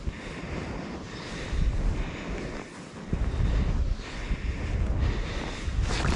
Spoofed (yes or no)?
no